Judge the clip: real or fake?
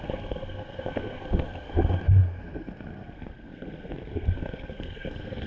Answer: fake